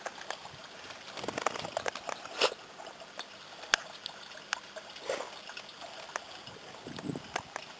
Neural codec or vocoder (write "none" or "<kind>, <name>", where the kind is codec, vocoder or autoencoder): none